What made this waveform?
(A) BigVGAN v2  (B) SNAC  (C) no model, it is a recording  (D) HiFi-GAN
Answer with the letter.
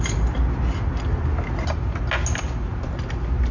C